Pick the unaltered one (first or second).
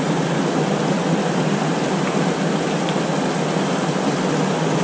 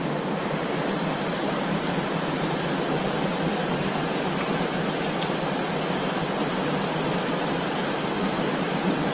first